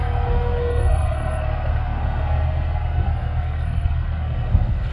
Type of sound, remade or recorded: remade